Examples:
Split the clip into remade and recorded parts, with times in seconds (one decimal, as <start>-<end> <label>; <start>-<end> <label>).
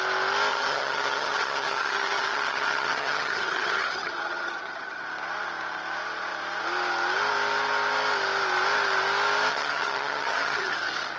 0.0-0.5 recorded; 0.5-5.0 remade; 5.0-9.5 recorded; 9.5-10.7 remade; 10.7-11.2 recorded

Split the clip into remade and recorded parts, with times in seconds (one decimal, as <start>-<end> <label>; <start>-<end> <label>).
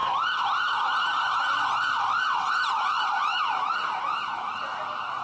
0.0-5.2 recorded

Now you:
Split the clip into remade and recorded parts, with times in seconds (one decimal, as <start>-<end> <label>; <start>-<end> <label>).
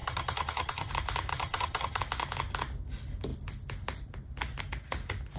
0.0-0.9 remade; 0.9-1.3 recorded; 1.3-2.0 remade; 2.0-5.4 recorded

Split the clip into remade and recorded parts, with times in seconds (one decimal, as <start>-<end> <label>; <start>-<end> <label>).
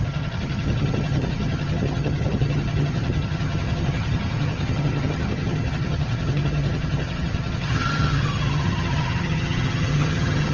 0.0-10.5 remade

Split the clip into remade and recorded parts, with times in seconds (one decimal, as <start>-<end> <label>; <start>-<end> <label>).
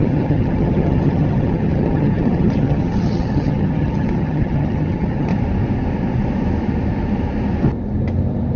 0.0-5.3 remade; 5.3-8.6 recorded